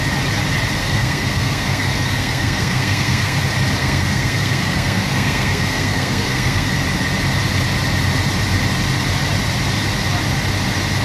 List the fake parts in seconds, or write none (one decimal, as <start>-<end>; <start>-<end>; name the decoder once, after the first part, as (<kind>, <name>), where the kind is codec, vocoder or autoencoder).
0.8-3.4 (codec, SNAC); 3.8-6.7